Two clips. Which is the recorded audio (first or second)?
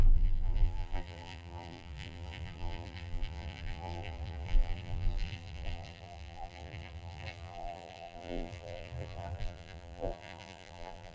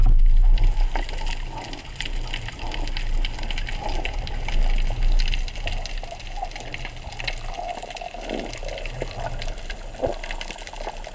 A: second